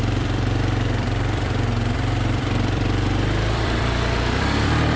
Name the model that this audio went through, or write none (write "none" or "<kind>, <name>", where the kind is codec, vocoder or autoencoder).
vocoder, BigVGAN v2